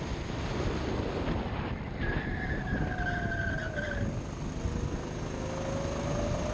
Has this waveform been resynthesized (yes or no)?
no